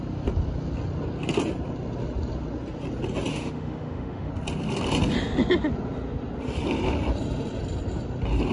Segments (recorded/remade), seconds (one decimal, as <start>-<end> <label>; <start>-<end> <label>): 0.0-3.3 recorded; 3.3-4.3 remade; 4.3-8.5 recorded